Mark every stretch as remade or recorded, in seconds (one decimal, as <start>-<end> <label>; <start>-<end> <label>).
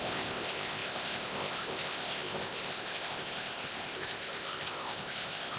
0.0-5.6 remade